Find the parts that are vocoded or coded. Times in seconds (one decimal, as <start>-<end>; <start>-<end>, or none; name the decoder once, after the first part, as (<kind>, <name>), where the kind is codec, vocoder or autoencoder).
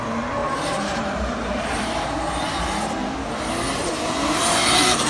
0.4-2.8 (vocoder, BigVGAN v2); 3.8-5.1